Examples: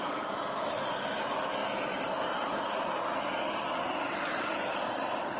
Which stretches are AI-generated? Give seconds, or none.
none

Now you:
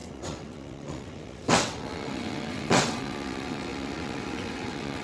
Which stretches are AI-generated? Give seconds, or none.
0.0-5.0 (vocoder, WaveNeXt)

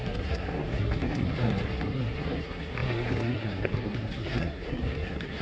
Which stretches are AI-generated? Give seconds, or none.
0.0-5.4 (codec, SNAC)

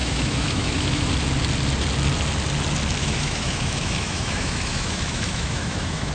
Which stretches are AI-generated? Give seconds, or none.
0.0-1.1 (autoencoder, DAC-VAE); 3.0-6.1

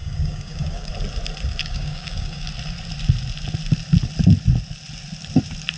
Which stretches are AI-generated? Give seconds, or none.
0.0-0.9 (codec, DAC); 1.6-2.5

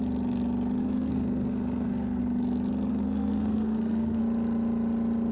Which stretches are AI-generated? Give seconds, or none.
0.8-2.2 (codec, SNAC); 2.9-4.2